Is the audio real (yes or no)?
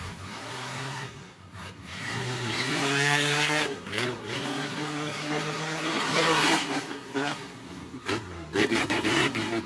no